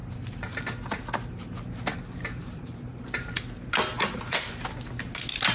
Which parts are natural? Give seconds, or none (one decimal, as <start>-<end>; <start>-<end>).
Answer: 0.6-2.4; 3.3-3.9; 4.5-5.5